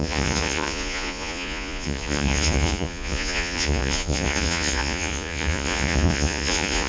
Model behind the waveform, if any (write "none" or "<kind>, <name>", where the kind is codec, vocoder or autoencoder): vocoder, Vocos